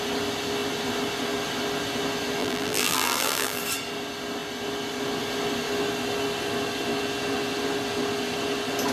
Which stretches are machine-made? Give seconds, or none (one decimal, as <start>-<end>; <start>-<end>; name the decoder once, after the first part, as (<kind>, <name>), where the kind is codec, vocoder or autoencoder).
2.4-3.6 (vocoder, BigVGAN v2)